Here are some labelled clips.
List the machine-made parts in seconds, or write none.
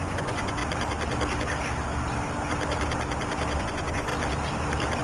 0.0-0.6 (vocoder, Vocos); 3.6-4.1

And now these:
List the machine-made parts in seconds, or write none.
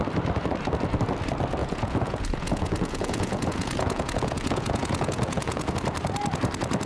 1.6-5.7 (vocoder, Vocos)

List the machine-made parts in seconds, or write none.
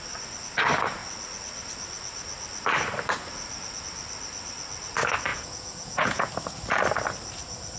5.3-6.3 (vocoder, Vocos)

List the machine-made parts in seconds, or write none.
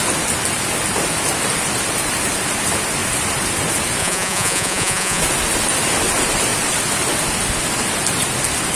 4.0-5.2 (vocoder, Vocos)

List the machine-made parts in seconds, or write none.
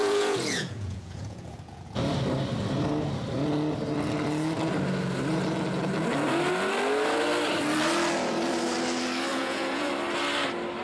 0.0-2.0 (vocoder, Vocos); 9.3-9.9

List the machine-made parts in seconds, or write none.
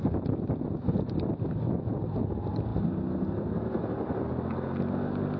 none